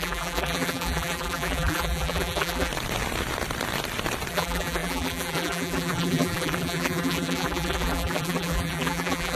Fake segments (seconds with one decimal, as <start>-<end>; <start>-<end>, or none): 0.0-2.7; 4.3-9.4